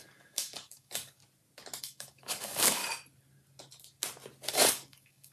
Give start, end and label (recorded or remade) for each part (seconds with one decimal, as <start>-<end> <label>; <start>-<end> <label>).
0.0-1.2 remade; 1.2-1.8 recorded; 1.8-2.8 remade; 2.8-4.5 recorded; 4.5-5.3 remade